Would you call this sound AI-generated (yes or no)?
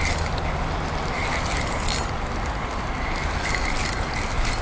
no